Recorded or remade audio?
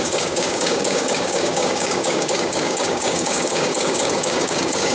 remade